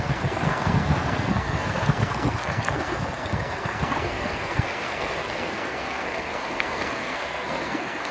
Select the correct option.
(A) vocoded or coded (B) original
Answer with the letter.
A